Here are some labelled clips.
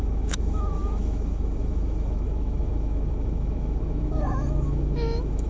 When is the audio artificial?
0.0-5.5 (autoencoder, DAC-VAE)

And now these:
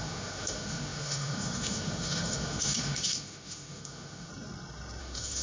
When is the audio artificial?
0.0-4.3 (autoencoder, DAC-VAE); 5.0-5.4